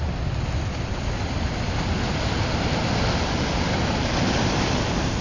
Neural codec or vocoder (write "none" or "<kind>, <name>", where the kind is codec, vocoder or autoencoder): none